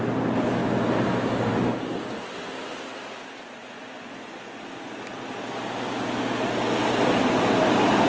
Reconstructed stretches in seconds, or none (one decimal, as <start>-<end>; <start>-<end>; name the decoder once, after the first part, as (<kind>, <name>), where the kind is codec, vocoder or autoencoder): 3.6-4.6 (vocoder, Vocos)